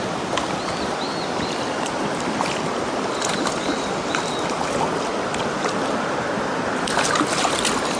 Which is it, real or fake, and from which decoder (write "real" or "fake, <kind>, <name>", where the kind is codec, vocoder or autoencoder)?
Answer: real